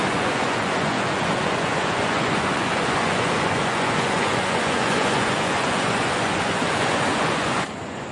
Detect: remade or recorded remade